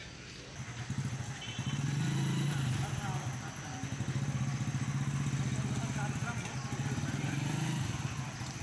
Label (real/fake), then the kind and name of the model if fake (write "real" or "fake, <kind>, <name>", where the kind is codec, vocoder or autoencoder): real